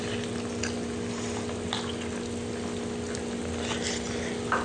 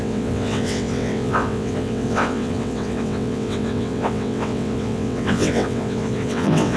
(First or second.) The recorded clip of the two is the first